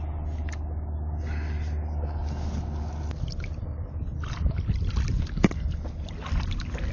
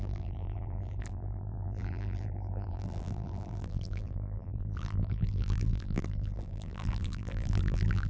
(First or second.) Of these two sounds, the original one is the first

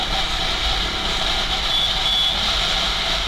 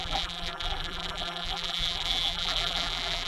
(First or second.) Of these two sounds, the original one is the first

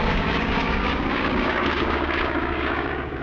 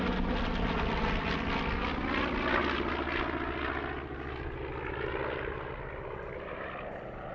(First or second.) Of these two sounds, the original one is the second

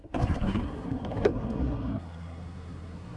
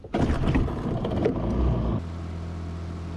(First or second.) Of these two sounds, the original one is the second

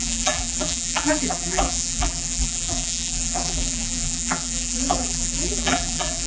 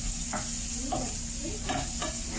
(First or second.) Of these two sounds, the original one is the second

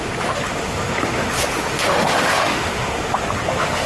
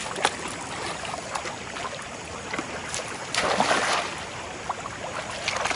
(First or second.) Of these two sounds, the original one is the second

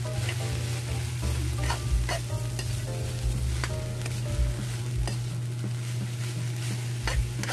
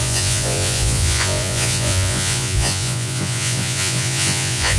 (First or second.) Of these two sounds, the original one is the first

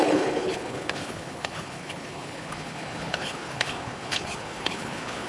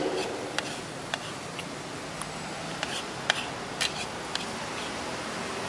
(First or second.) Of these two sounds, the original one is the second